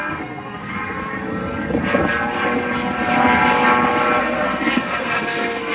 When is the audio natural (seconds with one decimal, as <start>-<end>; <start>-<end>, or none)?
0.8-4.2